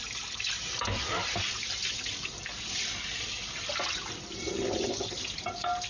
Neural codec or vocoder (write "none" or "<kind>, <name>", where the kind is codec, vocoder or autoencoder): none